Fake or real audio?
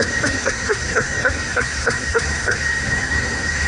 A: fake